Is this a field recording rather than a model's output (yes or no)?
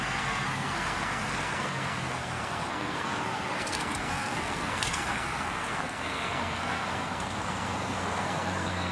no